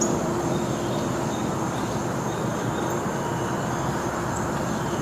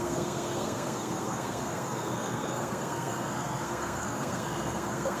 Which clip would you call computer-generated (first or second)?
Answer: second